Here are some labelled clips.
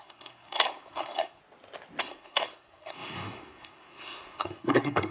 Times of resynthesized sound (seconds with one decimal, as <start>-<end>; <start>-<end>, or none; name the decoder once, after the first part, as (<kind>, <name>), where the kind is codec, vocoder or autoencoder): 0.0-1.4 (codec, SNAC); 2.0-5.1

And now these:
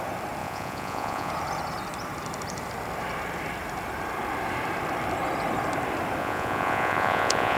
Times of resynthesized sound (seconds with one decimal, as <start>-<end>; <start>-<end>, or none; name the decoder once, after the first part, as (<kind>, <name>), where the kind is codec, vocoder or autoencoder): 0.4-1.3 (vocoder, Vocos); 6.2-7.6

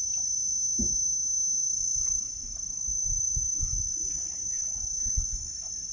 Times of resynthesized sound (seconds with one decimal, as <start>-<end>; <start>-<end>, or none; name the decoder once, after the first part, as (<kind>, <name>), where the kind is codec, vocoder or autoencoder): none

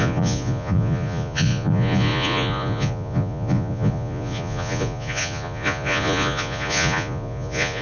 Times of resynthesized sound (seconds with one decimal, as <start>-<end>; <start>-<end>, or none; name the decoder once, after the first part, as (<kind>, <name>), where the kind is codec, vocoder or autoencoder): 0.0-7.8 (vocoder, Vocos)